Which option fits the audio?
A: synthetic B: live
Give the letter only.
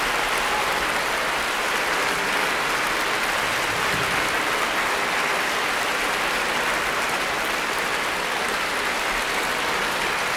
B